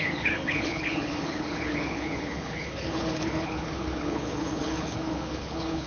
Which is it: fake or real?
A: fake